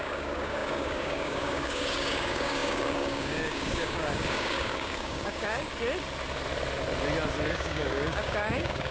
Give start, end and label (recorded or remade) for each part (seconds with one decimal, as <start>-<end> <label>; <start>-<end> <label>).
0.0-5.7 remade; 5.7-7.5 recorded; 7.5-8.9 remade